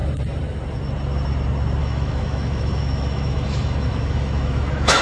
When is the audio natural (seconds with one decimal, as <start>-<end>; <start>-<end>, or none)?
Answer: 0.0-1.8